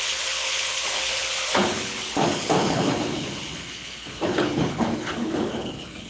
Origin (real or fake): fake